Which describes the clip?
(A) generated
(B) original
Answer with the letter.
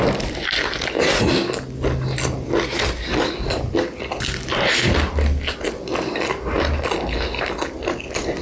B